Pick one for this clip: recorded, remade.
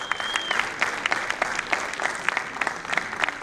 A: recorded